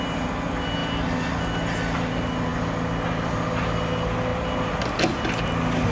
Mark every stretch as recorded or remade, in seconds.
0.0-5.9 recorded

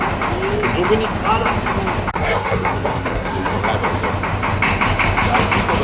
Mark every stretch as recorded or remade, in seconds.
0.0-2.1 recorded; 2.1-3.6 remade; 3.6-5.8 recorded